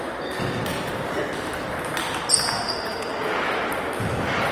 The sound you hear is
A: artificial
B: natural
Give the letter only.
B